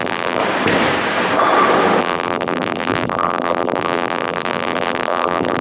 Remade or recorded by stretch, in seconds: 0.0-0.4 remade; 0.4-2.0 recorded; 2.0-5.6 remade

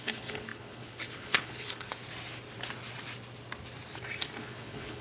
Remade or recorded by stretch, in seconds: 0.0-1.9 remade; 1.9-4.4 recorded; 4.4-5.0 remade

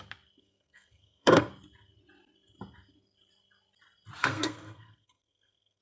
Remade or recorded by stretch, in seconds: 0.0-0.4 recorded; 0.4-1.5 remade; 1.5-4.2 recorded; 4.2-5.8 remade

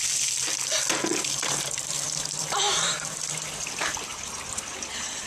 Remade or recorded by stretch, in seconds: 0.0-1.1 recorded; 1.1-3.3 remade; 3.3-5.3 recorded

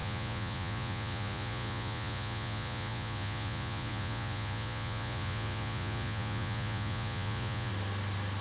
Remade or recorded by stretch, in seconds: 0.0-7.7 remade; 7.7-8.4 recorded

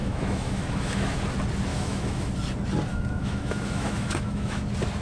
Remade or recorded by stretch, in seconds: 0.0-1.2 remade; 1.2-1.7 recorded; 1.7-2.3 remade; 2.3-2.9 recorded; 2.9-4.6 remade; 4.6-5.0 recorded

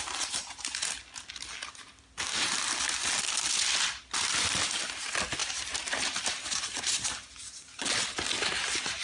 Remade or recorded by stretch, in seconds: 0.0-9.0 recorded

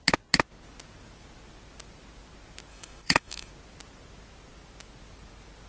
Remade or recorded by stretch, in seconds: 0.0-2.7 recorded; 2.7-3.5 remade; 3.5-5.7 recorded